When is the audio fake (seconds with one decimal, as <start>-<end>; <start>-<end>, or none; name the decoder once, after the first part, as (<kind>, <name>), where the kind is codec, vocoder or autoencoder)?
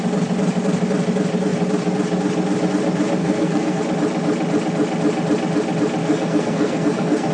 3.2-3.8 (codec, SNAC); 6.0-7.3